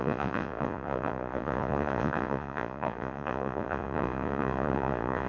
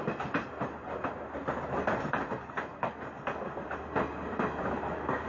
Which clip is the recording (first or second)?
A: second